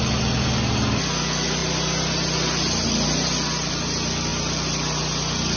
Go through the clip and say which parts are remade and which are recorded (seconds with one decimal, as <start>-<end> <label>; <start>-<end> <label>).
0.0-5.6 recorded